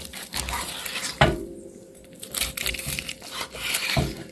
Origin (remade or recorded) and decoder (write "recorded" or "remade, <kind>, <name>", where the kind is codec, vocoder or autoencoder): recorded